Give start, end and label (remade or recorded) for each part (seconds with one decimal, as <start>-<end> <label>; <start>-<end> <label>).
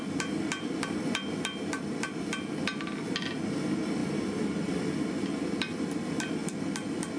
0.0-7.2 recorded